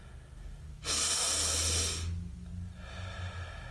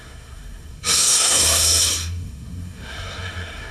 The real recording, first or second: first